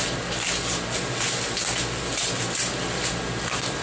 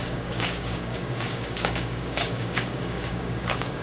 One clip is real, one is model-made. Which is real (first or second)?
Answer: first